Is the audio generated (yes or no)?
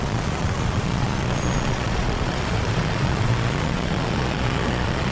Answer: yes